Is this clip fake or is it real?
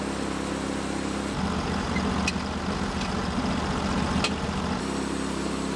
real